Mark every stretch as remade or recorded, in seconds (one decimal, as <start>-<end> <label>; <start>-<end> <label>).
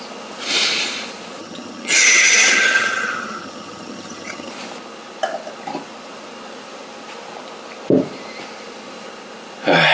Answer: 0.0-1.4 recorded; 1.4-4.5 remade; 4.5-9.9 recorded